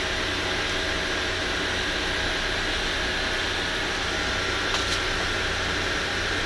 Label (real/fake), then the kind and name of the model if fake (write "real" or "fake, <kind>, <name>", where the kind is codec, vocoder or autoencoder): real